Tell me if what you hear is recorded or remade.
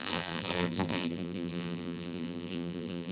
remade